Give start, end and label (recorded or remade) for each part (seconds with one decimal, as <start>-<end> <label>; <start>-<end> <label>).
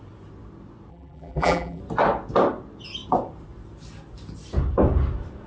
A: 0.0-0.9 recorded; 0.9-1.8 remade; 1.8-5.5 recorded